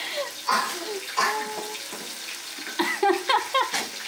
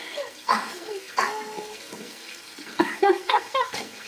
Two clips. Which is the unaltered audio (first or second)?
first